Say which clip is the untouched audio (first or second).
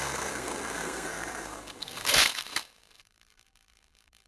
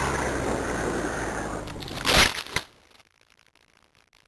second